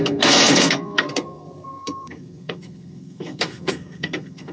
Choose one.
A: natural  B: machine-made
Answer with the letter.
B